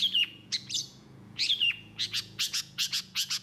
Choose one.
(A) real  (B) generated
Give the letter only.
B